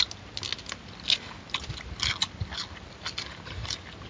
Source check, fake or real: real